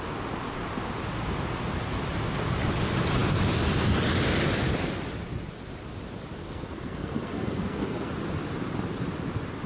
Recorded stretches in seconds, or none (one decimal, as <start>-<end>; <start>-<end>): 0.0-6.4; 8.1-9.7